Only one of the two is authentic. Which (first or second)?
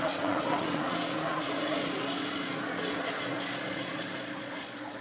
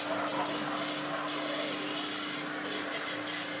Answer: second